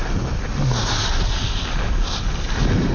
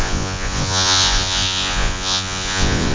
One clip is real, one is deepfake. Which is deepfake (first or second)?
second